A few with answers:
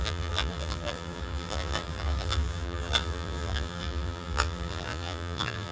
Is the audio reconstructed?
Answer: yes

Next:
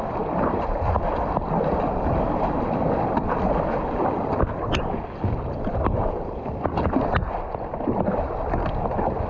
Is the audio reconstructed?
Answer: no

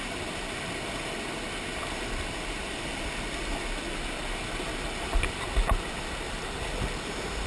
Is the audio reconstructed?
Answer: no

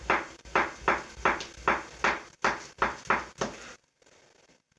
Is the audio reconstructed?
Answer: no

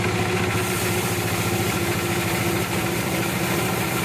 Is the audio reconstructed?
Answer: yes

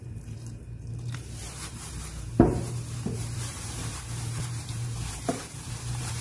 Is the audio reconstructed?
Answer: yes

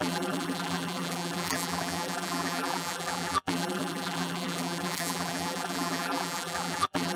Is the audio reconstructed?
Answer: yes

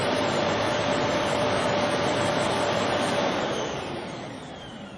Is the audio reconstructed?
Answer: yes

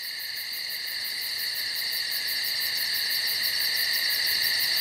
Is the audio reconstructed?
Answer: yes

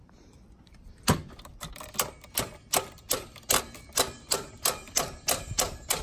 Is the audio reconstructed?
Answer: yes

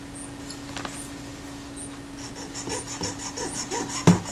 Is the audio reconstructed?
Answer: no